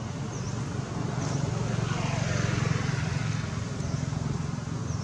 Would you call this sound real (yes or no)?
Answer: yes